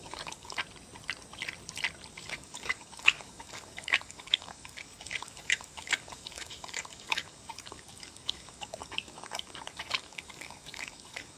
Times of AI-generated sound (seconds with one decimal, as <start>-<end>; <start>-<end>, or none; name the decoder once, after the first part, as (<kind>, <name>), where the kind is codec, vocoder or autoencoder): 0.0-0.6 (codec, DAC); 2.1-11.4